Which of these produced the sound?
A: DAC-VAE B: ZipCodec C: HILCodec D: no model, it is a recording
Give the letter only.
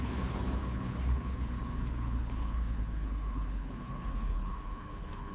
C